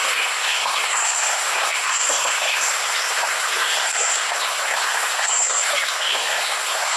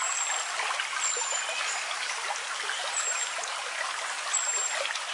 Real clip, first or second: second